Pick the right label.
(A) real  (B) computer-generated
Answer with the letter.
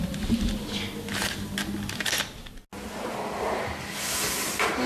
A